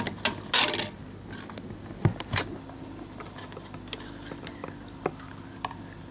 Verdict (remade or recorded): recorded